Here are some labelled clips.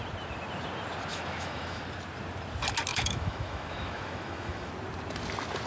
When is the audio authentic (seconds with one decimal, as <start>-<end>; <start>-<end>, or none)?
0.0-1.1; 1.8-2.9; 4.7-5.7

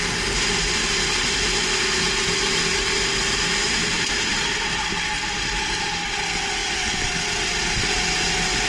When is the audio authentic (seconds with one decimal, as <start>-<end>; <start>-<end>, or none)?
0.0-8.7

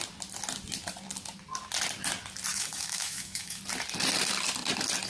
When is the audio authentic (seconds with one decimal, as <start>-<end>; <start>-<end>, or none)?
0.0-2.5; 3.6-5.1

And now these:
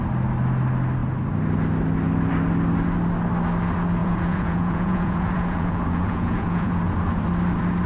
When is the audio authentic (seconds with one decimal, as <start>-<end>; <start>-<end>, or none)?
0.0-4.0; 6.8-7.9